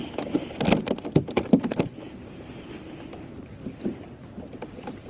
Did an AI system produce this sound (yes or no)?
no